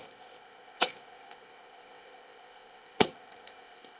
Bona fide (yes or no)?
no